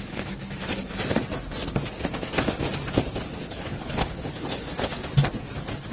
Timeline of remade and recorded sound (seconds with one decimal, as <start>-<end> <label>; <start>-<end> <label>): 0.0-3.4 recorded; 3.4-4.6 remade; 4.6-5.9 recorded